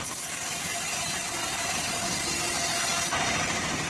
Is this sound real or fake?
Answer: real